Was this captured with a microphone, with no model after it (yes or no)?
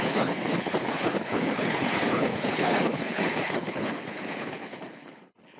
no